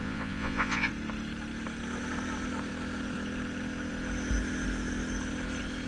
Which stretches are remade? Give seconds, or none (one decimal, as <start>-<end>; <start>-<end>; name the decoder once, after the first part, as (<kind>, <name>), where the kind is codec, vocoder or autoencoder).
0.0-0.9 (vocoder, Vocos)